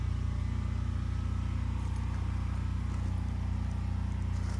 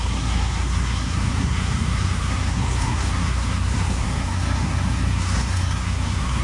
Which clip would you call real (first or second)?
first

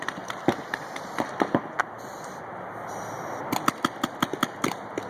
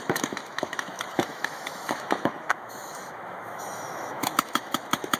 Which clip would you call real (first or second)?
first